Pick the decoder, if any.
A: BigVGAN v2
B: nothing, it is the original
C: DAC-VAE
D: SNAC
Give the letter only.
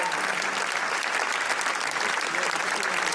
B